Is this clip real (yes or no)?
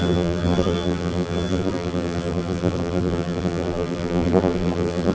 no